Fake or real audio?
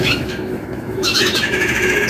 fake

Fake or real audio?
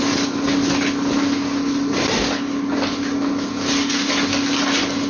real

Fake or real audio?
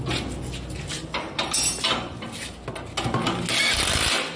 real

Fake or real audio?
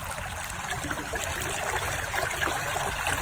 real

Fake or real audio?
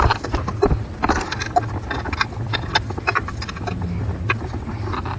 real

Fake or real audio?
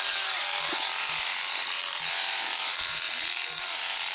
fake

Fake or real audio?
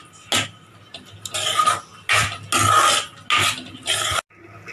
real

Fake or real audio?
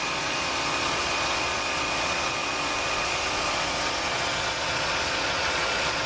fake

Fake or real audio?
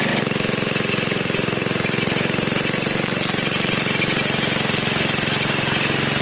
real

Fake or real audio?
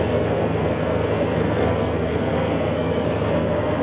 fake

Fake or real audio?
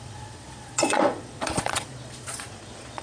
fake